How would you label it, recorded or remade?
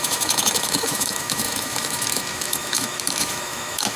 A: remade